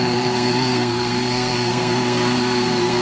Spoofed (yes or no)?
yes